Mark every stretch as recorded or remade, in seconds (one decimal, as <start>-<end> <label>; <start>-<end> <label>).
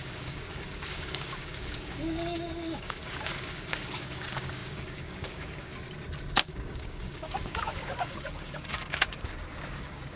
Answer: 0.0-5.7 remade; 5.7-6.3 recorded; 6.3-10.2 remade